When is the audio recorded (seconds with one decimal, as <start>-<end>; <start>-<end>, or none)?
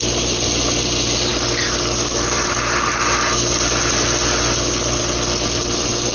0.0-6.1